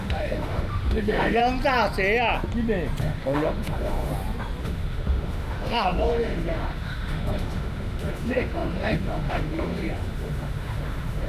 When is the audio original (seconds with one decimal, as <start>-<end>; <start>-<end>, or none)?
1.4-3.0; 4.1-4.6